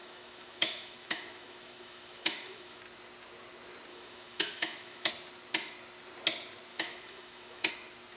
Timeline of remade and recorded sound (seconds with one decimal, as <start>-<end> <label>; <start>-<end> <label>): 0.0-2.8 remade; 2.8-3.9 recorded; 3.9-5.1 remade; 5.1-6.7 recorded; 6.7-7.7 remade; 7.7-8.2 recorded